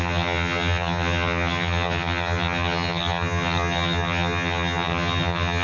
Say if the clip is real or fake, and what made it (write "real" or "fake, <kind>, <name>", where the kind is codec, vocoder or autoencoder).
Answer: fake, vocoder, HiFi-GAN